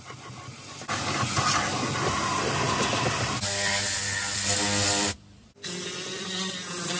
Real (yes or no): yes